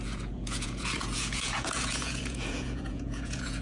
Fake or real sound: fake